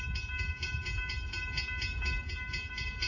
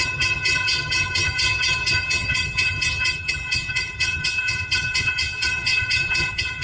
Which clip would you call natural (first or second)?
first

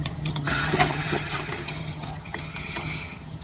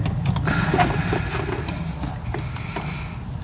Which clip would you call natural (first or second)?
second